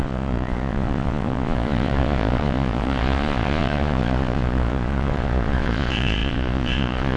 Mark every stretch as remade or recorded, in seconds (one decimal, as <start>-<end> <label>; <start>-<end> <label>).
0.0-7.2 remade